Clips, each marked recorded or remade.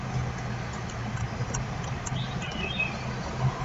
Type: recorded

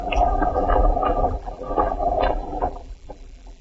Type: remade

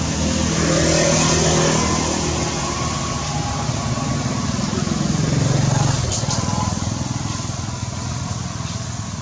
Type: recorded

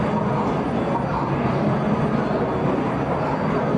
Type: recorded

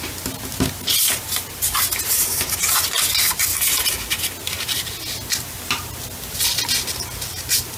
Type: recorded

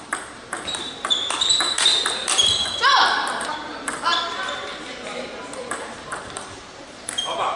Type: remade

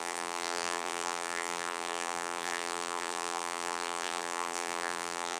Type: remade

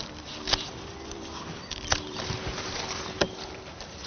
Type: remade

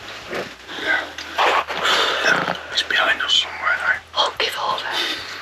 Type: recorded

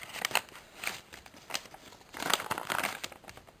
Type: recorded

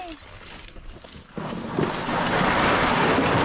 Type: recorded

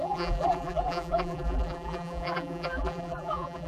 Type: remade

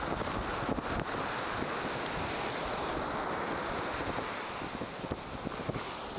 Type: recorded